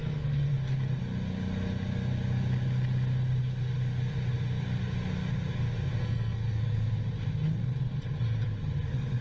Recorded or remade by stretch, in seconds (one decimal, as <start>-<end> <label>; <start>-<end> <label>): 0.0-0.5 remade; 0.5-6.0 recorded; 6.0-6.9 remade; 6.9-9.2 recorded